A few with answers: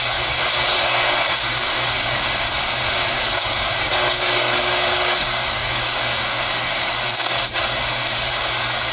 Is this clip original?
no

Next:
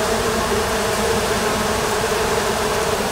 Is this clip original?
no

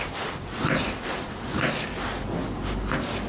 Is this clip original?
yes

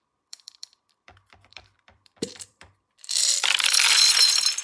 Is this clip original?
no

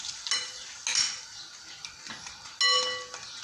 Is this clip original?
yes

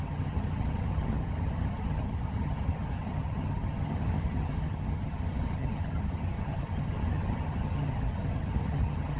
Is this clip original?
no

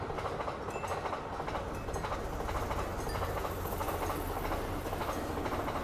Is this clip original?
yes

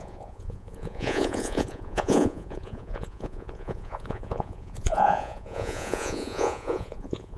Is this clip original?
no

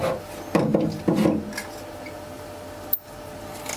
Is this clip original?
yes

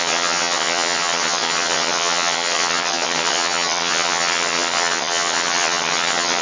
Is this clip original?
no